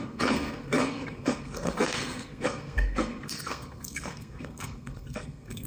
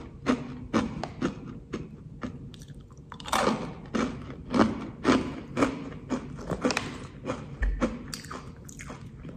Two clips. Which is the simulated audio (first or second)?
first